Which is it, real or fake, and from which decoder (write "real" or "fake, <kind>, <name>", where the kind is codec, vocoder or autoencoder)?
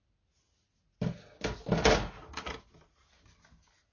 real